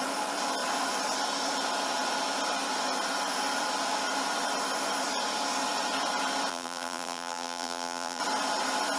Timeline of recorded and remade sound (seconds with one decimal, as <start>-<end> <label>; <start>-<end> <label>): 0.0-6.5 recorded; 6.5-8.2 remade; 8.2-9.0 recorded